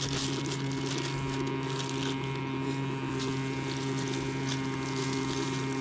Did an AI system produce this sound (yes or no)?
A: no